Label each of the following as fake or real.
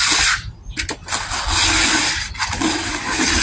real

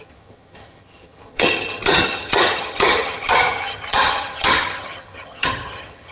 fake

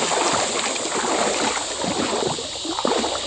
real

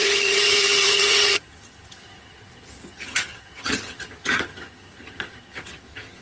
fake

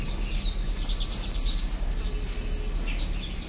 real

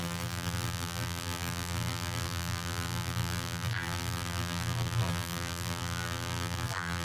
fake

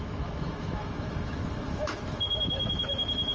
fake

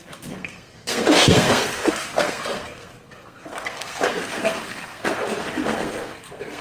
fake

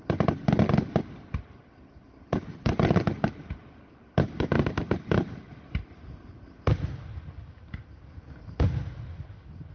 real